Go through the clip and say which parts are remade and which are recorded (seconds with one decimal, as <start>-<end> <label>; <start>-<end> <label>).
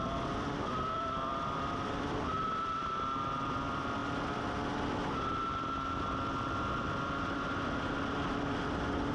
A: 0.0-4.0 remade; 4.0-8.4 recorded; 8.4-9.1 remade